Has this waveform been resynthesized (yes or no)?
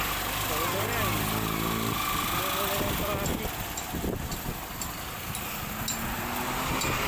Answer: no